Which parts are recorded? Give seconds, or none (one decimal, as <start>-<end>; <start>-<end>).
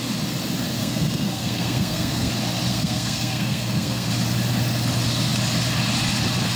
0.0-0.8; 2.3-2.7; 4.1-6.6